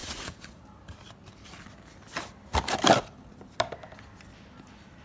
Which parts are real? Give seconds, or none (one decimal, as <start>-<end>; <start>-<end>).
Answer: 0.6-5.0